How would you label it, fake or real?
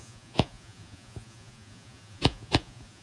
fake